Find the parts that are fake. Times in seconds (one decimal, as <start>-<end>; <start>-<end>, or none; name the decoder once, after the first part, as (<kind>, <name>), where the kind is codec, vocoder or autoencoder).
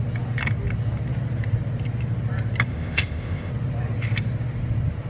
2.7-3.5 (codec, ZipCodec)